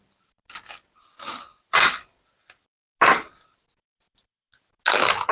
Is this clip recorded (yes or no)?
yes